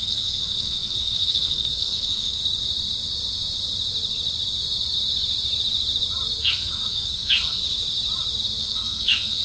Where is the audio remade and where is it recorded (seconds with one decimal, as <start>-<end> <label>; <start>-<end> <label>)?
0.0-2.4 remade; 2.4-6.4 recorded; 6.4-7.6 remade; 7.6-8.6 recorded; 8.6-9.4 remade